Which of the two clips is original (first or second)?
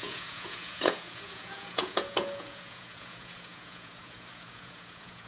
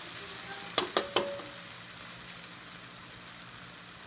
second